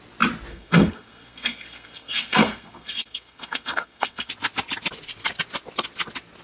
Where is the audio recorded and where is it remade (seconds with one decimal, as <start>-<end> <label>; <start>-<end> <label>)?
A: 0.0-0.5 recorded; 0.5-4.3 remade; 4.3-6.4 recorded